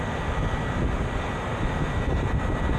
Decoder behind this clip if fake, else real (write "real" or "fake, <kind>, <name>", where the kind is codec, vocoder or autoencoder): real